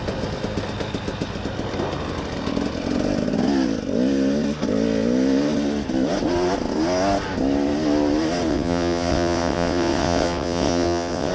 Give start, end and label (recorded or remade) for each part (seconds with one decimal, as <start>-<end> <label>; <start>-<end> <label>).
0.0-8.5 recorded; 8.5-11.3 remade